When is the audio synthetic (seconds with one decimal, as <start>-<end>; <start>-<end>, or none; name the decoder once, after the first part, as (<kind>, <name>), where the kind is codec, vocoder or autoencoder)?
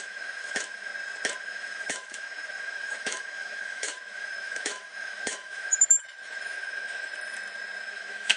0.0-0.9 (autoencoder, DAC-VAE); 1.4-7.1; 7.8-8.4